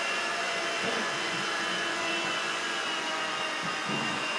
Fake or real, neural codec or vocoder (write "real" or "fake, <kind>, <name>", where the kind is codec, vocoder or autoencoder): fake, vocoder, Vocos